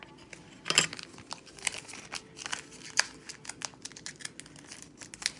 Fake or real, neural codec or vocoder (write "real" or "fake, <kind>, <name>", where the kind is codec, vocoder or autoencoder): real